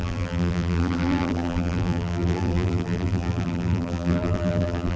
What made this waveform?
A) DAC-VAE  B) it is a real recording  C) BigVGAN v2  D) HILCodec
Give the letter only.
C